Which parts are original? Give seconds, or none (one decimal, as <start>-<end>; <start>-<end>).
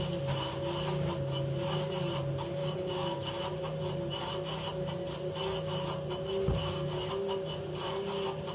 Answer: 0.0-2.6; 3.3-6.6; 7.1-8.5